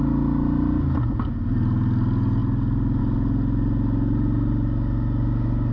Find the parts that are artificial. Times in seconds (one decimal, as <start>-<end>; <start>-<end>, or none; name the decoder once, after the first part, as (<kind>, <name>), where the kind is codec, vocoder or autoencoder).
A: none